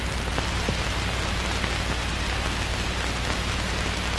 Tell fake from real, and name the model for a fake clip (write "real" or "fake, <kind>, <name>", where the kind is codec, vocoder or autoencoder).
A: real